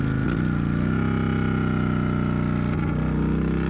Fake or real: real